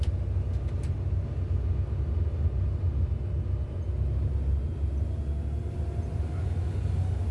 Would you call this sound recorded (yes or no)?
yes